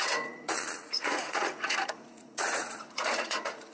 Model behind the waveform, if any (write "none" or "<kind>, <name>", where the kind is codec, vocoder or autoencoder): vocoder, Vocos